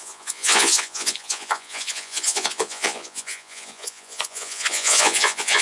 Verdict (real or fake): fake